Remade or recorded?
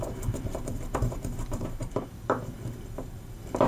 remade